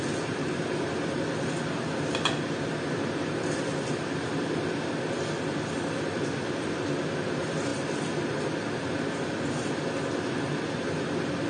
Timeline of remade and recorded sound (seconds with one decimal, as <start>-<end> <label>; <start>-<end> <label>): 0.0-11.5 recorded